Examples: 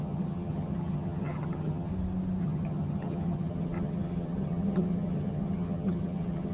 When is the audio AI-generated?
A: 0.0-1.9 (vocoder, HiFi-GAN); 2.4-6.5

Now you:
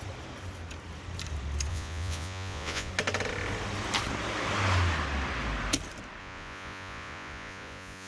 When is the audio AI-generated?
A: 1.7-2.9 (vocoder, Vocos); 6.2-8.1

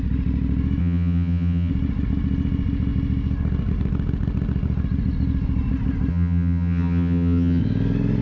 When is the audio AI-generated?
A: 0.8-1.7 (vocoder, HiFi-GAN); 6.1-7.6